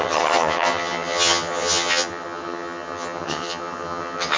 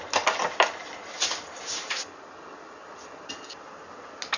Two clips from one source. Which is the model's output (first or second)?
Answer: first